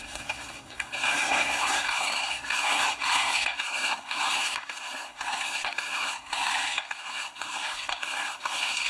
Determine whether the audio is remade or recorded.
remade